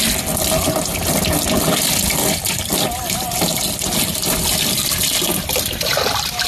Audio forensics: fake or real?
real